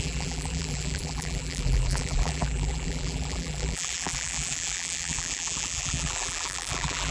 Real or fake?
fake